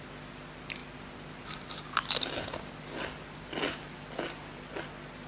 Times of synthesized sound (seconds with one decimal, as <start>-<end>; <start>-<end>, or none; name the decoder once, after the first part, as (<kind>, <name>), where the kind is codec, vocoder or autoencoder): 0.0-5.3 (vocoder, BigVGAN v2)